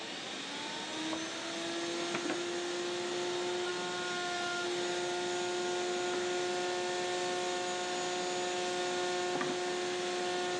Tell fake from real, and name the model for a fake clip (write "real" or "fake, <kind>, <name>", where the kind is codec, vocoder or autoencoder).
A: real